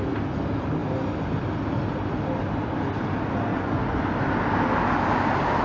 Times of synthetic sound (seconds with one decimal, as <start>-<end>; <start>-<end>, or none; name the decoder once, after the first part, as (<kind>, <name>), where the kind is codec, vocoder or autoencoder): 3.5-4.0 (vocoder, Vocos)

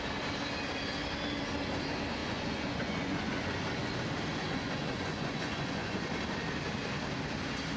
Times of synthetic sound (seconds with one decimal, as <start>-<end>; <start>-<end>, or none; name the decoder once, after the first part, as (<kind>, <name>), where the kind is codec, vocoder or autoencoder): 2.2-3.9 (vocoder, Vocos); 4.3-6.1

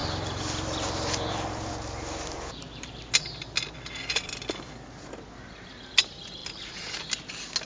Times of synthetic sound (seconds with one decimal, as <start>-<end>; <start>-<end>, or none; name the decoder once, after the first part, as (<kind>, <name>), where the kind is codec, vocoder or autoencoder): 0.0-2.9 (vocoder, BigVGAN v2); 6.4-7.0

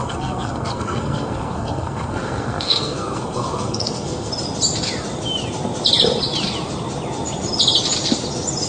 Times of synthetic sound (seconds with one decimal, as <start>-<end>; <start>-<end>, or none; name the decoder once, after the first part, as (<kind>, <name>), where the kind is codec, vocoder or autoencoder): 0.0-4.3 (codec, SNAC)

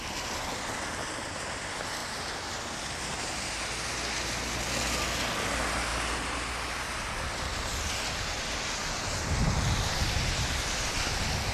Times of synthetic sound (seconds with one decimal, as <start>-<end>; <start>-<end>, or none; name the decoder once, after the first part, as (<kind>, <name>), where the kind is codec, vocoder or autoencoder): none